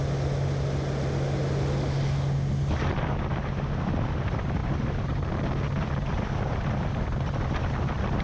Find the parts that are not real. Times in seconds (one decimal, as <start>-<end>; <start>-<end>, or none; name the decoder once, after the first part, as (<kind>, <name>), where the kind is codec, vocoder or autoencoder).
none